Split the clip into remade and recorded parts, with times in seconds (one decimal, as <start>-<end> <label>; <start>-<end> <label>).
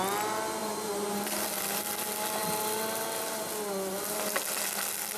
0.0-0.6 recorded; 0.6-1.3 remade; 1.3-5.2 recorded